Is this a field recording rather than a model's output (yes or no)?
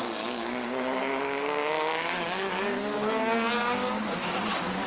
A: no